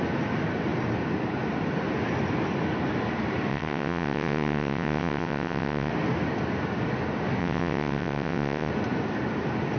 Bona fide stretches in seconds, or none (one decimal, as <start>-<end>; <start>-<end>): 0.0-3.5; 5.9-7.4; 8.7-9.8